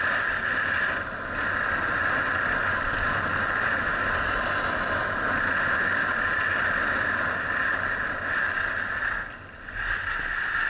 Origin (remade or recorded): recorded